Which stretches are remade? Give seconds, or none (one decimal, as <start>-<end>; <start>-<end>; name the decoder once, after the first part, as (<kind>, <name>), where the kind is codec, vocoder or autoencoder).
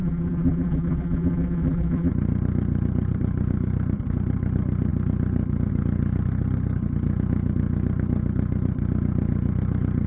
0.0-2.1 (vocoder, BigVGAN v2)